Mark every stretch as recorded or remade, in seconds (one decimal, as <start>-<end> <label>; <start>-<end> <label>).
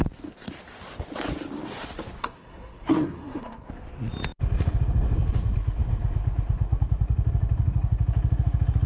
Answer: 0.0-2.2 recorded; 2.2-3.7 remade; 3.7-8.9 recorded